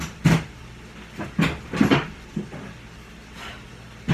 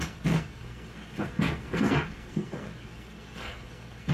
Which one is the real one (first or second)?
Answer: first